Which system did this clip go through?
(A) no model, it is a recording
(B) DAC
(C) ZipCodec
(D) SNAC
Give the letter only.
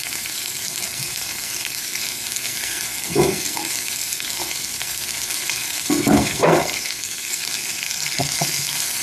D